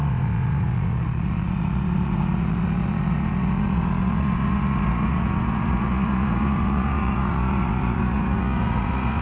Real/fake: fake